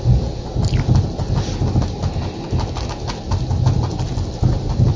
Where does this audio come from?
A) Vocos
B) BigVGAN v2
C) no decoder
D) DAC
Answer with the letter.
C